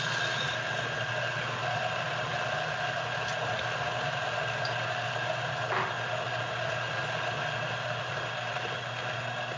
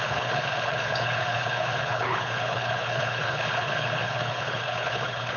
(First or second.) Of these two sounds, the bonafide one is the first